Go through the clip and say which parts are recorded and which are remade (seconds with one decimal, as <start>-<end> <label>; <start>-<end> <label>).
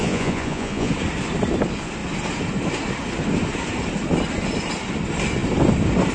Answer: 0.0-0.9 remade; 0.9-6.1 recorded